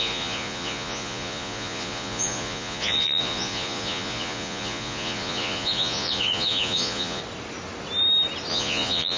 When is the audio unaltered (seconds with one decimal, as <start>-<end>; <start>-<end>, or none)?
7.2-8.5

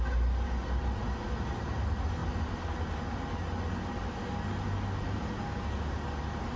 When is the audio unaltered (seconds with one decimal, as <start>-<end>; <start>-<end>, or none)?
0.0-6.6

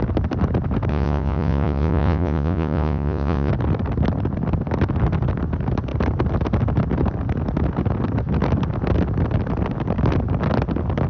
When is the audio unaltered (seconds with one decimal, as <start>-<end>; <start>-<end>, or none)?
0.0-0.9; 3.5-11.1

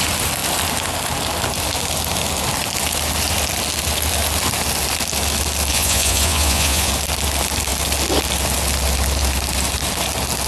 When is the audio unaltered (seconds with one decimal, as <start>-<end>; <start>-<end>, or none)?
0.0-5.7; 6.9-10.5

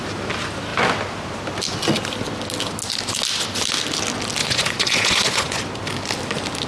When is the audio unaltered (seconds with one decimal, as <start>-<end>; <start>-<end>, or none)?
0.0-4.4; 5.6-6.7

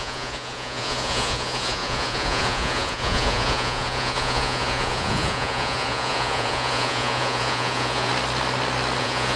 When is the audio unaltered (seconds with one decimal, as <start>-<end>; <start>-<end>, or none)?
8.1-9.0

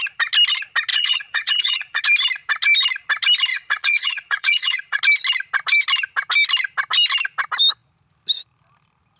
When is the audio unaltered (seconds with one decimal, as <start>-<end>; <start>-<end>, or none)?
0.0-0.9; 2.0-3.5; 5.0-9.2